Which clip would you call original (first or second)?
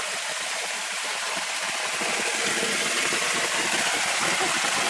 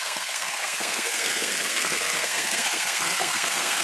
first